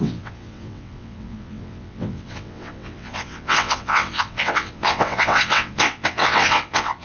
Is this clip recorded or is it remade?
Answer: remade